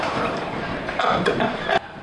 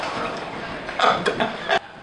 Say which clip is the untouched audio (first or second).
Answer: second